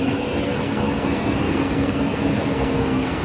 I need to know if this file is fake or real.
fake